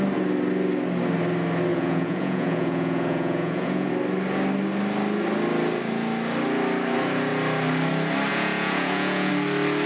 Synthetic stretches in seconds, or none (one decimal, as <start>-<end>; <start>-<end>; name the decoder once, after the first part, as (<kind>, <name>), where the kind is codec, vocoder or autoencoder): 1.7-3.9 (vocoder, Vocos); 8.3-9.3

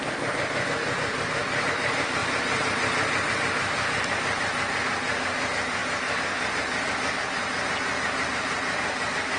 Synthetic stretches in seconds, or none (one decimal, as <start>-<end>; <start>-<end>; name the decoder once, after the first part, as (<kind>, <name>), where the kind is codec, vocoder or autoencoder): none

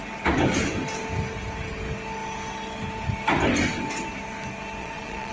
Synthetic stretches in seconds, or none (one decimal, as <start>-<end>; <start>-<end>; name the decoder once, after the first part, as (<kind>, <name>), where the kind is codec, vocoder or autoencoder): 4.8-5.3 (vocoder, Vocos)

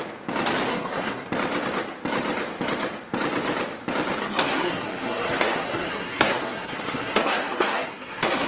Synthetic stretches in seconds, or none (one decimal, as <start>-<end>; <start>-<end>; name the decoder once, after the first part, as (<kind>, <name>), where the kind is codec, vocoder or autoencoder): 0.7-1.3 (codec, SNAC); 4.2-8.5

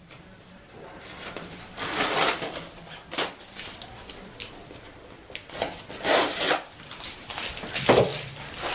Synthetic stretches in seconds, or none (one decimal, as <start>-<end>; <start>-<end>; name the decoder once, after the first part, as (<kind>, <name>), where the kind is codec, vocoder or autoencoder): 0.0-8.7 (vocoder, BigVGAN v2)

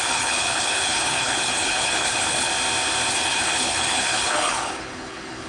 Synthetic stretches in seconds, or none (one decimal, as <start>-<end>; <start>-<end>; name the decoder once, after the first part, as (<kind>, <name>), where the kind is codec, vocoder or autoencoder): 0.0-2.5 (codec, HILCodec); 3.1-5.5

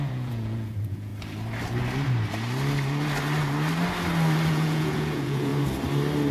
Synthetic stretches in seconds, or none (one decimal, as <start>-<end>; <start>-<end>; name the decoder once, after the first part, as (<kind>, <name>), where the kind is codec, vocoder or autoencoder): 0.0-1.1 (vocoder, Vocos); 4.5-5.5